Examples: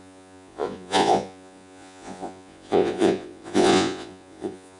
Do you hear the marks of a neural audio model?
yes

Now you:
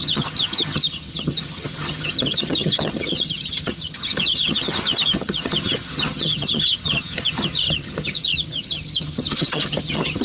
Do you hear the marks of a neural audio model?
yes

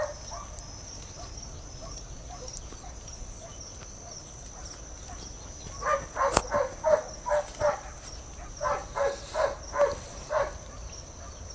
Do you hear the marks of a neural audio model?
no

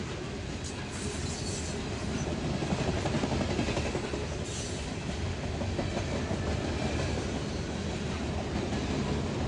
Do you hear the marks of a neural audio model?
no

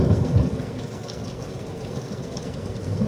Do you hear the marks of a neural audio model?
yes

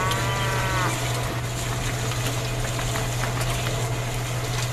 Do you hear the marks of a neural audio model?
no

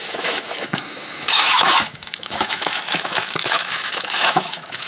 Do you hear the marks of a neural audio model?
yes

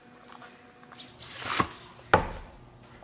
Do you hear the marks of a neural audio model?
no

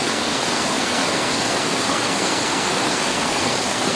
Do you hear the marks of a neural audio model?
yes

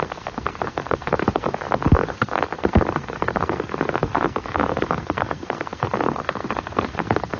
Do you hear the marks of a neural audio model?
yes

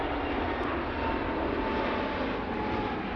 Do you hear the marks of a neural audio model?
no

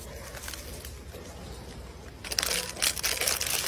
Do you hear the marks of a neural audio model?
no